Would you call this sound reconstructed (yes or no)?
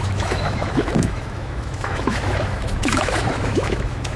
yes